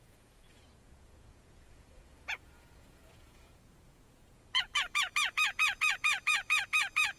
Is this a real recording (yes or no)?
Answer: no